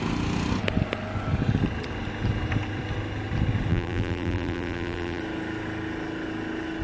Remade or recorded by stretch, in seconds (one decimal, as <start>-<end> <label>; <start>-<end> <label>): 0.0-3.7 recorded; 3.7-5.2 remade; 5.2-6.8 recorded

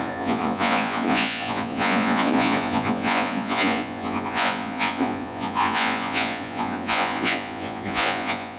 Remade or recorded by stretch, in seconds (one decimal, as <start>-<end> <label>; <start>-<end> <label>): 0.0-8.6 remade

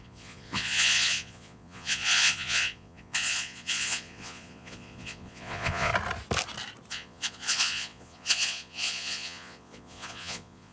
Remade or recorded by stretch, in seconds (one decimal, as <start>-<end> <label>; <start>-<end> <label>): 0.0-5.9 remade; 5.9-6.9 recorded; 6.9-10.7 remade